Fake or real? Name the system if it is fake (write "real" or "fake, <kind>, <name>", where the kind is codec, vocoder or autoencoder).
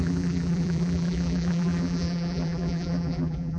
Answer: fake, vocoder, BigVGAN v2